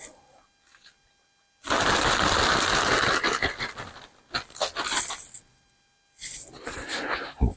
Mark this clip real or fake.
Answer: real